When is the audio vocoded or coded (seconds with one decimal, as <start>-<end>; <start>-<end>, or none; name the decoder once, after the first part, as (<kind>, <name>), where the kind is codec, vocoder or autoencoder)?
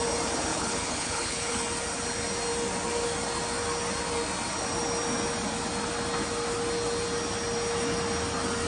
0.5-1.6 (codec, HILCodec)